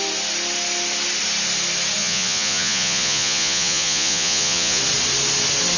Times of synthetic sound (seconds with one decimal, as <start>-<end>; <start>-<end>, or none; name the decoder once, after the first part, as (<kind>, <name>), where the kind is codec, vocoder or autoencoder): 2.0-4.8 (vocoder, Vocos)